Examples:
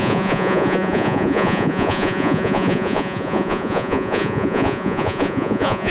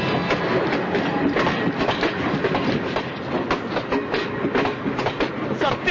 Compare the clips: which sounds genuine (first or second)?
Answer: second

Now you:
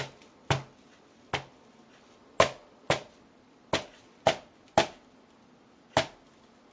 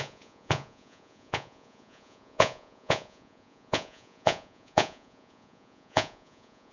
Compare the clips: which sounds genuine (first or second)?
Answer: first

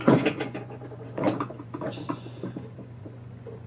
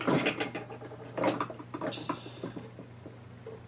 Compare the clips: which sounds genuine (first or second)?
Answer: second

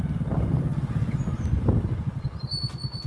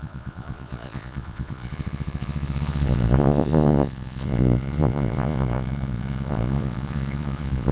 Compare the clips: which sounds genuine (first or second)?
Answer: first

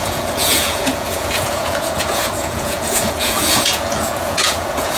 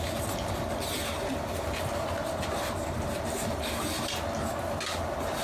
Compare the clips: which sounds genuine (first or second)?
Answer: second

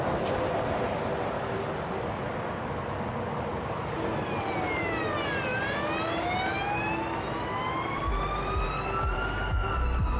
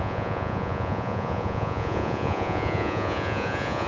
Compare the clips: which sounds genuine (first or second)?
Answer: first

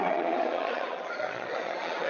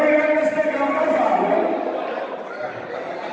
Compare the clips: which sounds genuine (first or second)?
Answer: second